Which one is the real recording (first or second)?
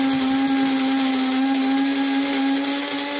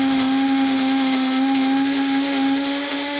first